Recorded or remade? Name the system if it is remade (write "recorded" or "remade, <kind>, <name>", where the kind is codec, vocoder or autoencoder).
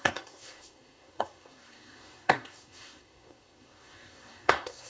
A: remade, codec, SNAC